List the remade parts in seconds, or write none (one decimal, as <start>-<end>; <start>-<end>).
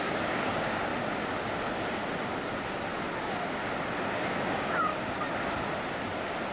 0.0-0.9; 3.2-3.6; 4.1-4.9